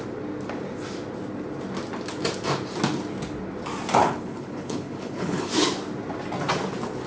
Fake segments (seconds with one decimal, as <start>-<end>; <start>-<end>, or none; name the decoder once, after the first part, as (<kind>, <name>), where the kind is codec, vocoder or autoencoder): 4.0-5.5 (codec, HILCodec)